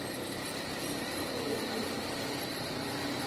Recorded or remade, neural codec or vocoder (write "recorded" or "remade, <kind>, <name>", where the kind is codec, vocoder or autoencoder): recorded